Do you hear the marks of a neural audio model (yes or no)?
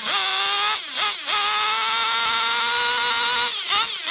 no